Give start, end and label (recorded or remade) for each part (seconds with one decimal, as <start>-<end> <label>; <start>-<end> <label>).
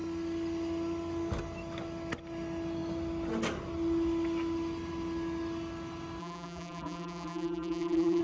0.0-6.2 recorded; 6.2-8.2 remade